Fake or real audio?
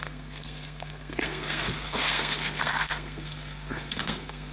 fake